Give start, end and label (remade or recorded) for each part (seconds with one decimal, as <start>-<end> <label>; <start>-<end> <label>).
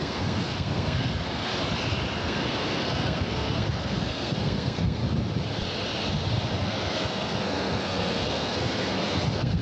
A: 0.0-1.5 remade; 1.5-2.2 recorded; 2.2-5.0 remade; 5.0-6.6 recorded; 6.6-9.6 remade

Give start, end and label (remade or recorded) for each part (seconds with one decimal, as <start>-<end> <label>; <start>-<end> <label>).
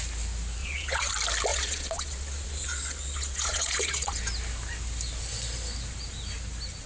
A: 0.0-0.6 recorded; 0.6-1.1 remade; 1.1-1.5 recorded; 1.5-4.2 remade; 4.2-6.9 recorded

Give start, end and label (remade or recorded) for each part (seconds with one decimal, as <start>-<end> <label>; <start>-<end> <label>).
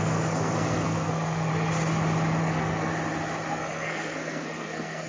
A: 0.0-1.5 remade; 1.5-2.4 recorded; 2.4-2.9 remade; 2.9-3.5 recorded; 3.5-5.1 remade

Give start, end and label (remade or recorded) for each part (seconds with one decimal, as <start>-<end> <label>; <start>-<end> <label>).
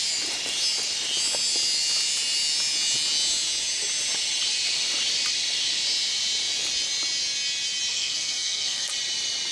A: 0.0-7.9 recorded; 7.9-8.9 remade; 8.9-9.5 recorded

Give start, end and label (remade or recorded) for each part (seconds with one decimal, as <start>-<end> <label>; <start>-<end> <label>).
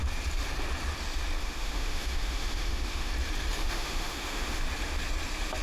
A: 0.0-1.4 recorded; 1.4-3.1 remade; 3.1-3.6 recorded; 3.6-4.6 remade; 4.6-5.6 recorded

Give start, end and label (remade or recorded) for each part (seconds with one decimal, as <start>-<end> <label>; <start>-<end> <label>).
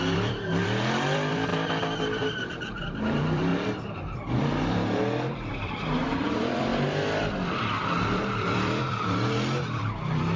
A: 0.0-1.5 remade; 1.5-2.8 recorded; 2.8-3.5 remade; 3.5-4.4 recorded; 4.4-6.7 remade; 6.7-7.3 recorded; 7.3-10.4 remade